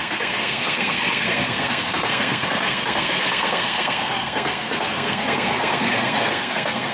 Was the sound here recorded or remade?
remade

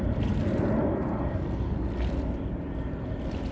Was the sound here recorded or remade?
remade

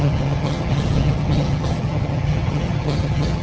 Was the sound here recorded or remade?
remade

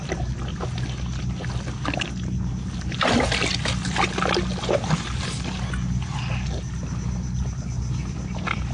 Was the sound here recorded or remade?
recorded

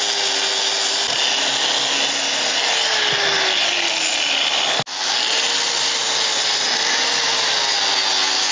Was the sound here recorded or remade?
recorded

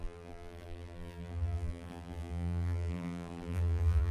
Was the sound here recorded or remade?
remade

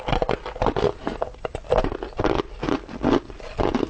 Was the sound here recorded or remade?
recorded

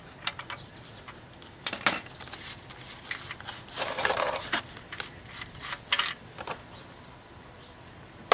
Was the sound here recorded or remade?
remade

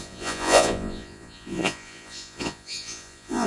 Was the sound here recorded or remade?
remade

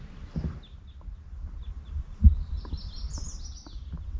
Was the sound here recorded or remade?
recorded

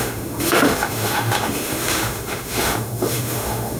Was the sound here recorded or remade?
remade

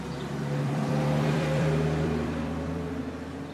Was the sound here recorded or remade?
remade